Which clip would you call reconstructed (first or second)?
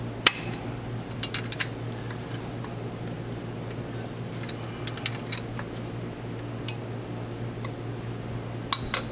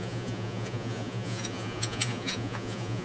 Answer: second